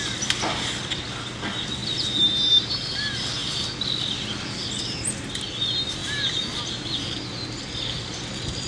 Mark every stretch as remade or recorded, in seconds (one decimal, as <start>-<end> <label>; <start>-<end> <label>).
0.0-8.7 recorded